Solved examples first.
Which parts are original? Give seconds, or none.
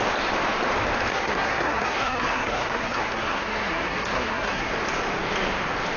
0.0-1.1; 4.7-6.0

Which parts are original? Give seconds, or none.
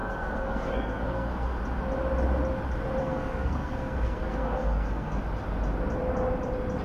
1.6-3.0; 5.2-6.8